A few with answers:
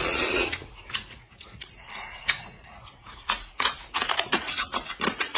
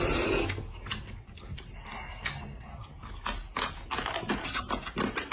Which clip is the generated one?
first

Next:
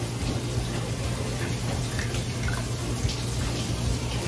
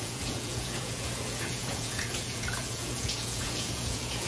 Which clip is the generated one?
second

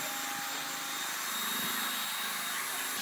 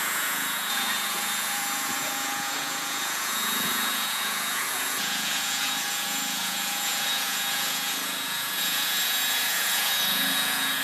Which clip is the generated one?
second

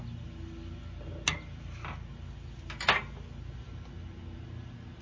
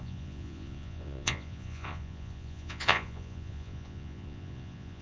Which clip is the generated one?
second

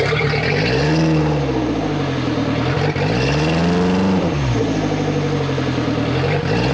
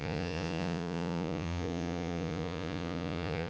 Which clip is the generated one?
second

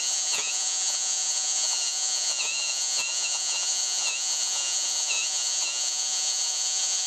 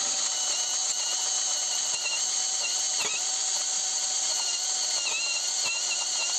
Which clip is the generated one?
first